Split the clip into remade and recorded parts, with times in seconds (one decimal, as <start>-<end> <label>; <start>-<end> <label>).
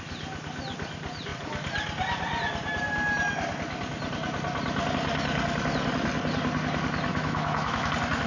0.0-7.1 recorded; 7.1-7.9 remade; 7.9-8.3 recorded